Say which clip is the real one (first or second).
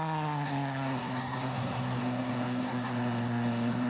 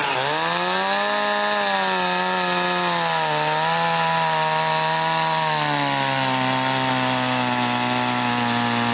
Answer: second